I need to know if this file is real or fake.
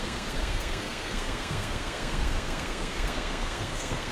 fake